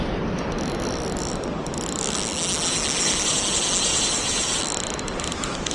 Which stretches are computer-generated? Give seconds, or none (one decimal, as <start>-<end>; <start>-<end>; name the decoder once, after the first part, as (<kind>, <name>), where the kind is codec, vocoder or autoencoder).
3.9-4.6 (vocoder, Vocos)